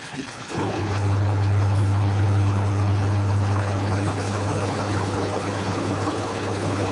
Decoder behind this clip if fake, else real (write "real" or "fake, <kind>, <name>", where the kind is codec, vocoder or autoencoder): fake, codec, HILCodec